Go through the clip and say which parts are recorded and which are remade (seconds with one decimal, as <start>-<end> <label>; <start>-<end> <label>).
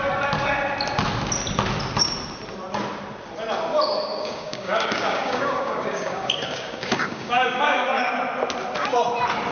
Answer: 0.0-4.1 recorded; 4.1-8.1 remade; 8.1-9.5 recorded